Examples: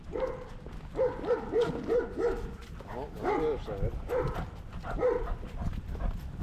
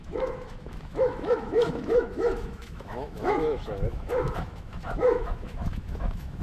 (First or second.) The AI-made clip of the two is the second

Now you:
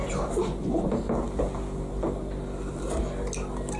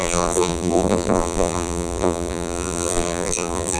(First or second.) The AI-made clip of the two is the second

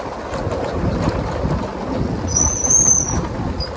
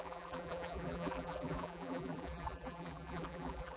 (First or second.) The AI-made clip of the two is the second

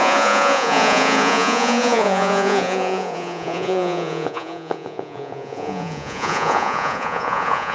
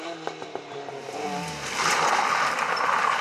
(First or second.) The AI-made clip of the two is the first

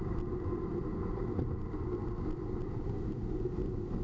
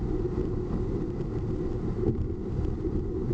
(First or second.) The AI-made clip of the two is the second